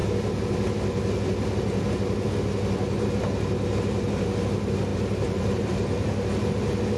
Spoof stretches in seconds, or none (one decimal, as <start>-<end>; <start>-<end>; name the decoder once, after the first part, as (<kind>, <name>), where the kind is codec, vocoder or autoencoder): 4.9-6.5 (vocoder, BigVGAN v2)